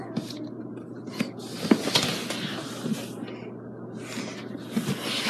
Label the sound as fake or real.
real